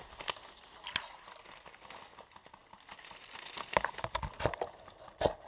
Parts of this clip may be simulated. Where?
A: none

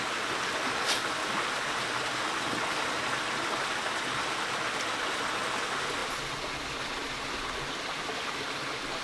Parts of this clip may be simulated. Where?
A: none

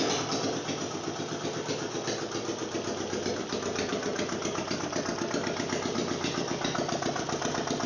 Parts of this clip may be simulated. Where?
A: none

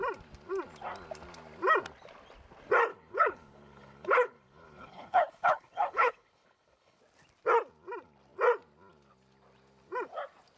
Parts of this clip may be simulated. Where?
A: 2.9-7.0 (codec, HILCodec)

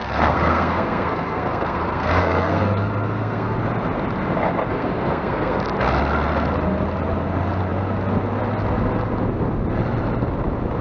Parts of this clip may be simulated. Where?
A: 0.0-3.6 (codec, SNAC); 4.7-5.6

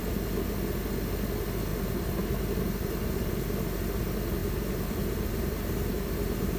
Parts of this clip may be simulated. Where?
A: 1.7-3.3 (vocoder, BigVGAN v2); 4.4-6.6

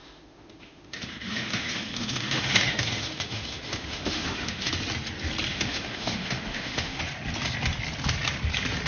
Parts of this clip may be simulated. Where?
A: 0.0-4.7 (autoencoder, DAC-VAE); 5.5-7.0

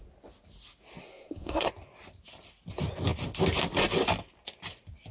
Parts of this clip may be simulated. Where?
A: 1.0-1.7 (codec, SNAC)